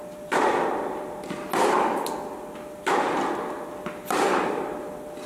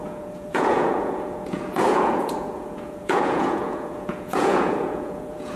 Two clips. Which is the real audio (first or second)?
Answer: first